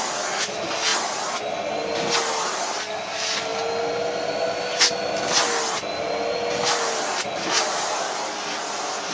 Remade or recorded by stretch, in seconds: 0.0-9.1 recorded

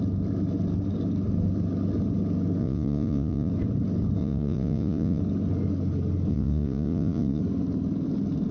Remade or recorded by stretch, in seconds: 0.0-2.6 recorded; 2.6-3.5 remade; 3.5-4.2 recorded; 4.2-5.2 remade; 5.2-6.3 recorded; 6.3-7.4 remade; 7.4-8.5 recorded